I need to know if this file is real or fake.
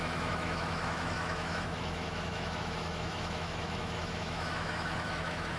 fake